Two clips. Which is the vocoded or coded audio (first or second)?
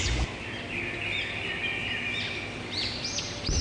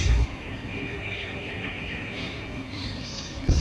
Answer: second